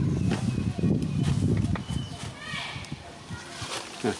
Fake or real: real